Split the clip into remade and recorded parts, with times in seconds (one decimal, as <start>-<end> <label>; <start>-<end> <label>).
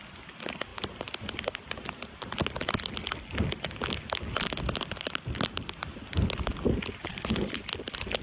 0.0-7.1 recorded; 7.1-7.6 remade; 7.6-8.2 recorded